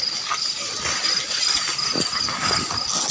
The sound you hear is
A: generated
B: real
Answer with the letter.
B